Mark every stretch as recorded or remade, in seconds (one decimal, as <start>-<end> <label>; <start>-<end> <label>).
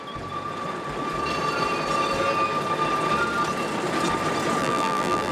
0.0-4.6 recorded; 4.6-5.3 remade